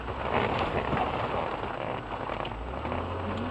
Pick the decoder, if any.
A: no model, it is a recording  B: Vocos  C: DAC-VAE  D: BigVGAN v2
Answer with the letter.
A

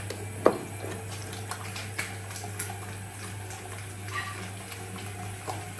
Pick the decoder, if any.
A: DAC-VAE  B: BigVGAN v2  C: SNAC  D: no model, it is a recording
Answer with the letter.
D